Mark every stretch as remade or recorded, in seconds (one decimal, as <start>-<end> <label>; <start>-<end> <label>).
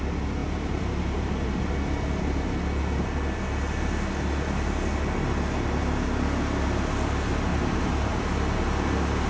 0.0-0.4 recorded; 0.4-1.7 remade; 1.7-7.5 recorded; 7.5-8.2 remade; 8.2-9.3 recorded